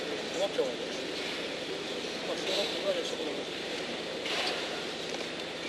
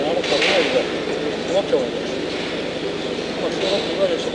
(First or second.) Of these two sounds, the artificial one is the first